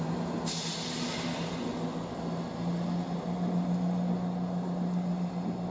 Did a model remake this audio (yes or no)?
no